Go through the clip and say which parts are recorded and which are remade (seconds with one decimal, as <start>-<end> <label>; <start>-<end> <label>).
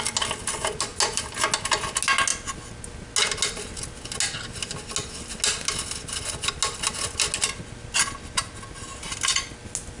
0.0-10.0 recorded